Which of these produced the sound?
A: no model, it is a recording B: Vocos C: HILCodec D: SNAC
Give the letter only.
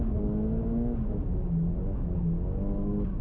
A